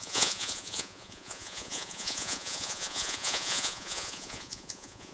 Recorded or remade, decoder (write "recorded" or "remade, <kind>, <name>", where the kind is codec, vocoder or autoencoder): remade, vocoder, Vocos